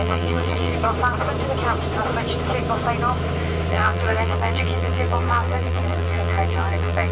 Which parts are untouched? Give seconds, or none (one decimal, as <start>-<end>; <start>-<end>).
0.7-3.7